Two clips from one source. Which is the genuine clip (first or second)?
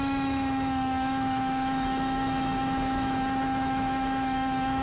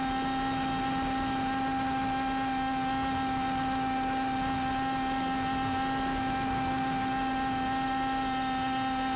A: second